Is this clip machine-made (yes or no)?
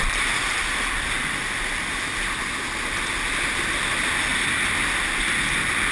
no